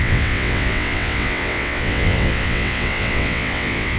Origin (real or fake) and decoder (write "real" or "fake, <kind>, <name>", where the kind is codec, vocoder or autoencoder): fake, vocoder, WaveNeXt